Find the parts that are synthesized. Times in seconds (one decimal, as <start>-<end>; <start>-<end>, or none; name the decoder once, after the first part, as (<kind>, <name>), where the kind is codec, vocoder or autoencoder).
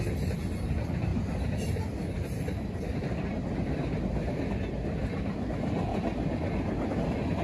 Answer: none